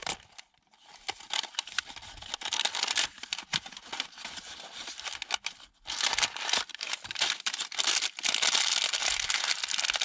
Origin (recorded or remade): recorded